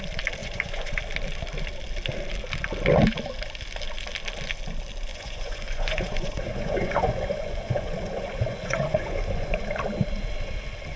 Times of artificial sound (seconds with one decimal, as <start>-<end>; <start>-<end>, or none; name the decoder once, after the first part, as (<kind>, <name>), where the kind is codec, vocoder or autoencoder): 0.4-1.0 (vocoder, Vocos); 5.1-9.6

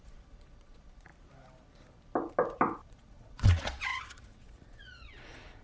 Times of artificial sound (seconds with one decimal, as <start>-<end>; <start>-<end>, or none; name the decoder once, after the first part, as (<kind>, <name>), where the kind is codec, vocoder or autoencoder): 0.0-1.1 (vocoder, Vocos); 2.9-5.6